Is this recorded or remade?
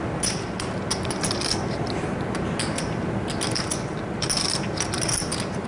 recorded